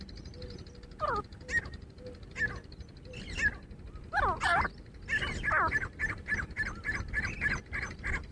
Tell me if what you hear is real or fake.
real